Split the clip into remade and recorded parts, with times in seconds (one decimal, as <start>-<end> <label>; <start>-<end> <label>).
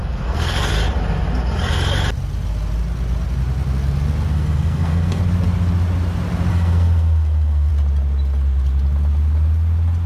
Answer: 0.0-0.7 remade; 0.7-4.3 recorded; 4.3-5.2 remade; 5.2-6.5 recorded; 6.5-7.7 remade; 7.7-10.1 recorded